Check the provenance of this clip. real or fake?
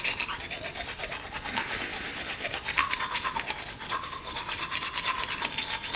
fake